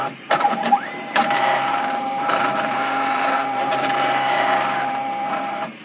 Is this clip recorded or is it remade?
remade